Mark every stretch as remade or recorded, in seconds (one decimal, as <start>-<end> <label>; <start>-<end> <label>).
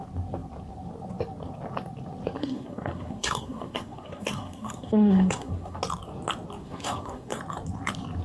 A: 0.0-2.4 recorded; 2.4-5.8 remade; 5.8-6.6 recorded; 6.6-7.4 remade; 7.4-8.2 recorded